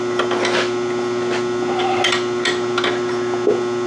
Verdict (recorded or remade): recorded